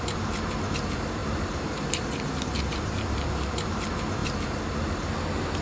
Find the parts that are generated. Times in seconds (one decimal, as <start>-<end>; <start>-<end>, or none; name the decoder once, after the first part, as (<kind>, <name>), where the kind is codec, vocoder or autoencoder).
0.0-5.6 (vocoder, BigVGAN v2)